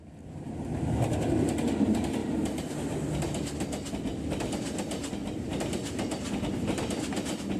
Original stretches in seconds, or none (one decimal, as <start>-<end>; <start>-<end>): 0.0-2.2; 3.0-5.2; 6.4-7.6